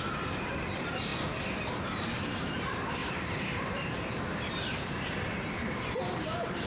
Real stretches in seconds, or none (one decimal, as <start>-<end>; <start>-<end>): 1.1-1.7